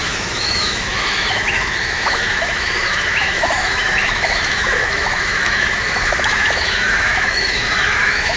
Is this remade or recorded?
remade